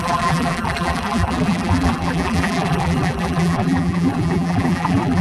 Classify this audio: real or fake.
fake